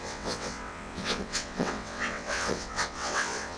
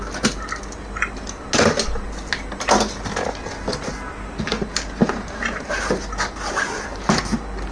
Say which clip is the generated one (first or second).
first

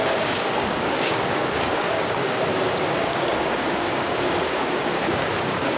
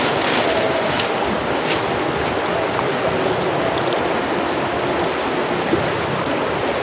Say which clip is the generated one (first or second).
first